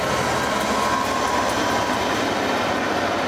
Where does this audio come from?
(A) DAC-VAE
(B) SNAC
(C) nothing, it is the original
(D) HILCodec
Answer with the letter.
C